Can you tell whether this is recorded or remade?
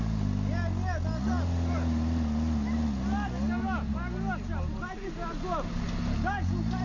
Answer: recorded